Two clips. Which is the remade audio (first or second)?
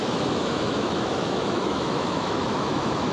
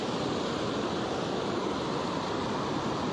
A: first